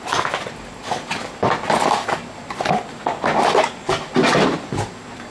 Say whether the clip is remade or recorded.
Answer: recorded